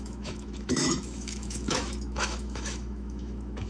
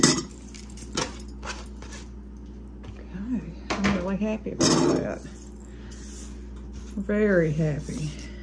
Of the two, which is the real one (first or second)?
second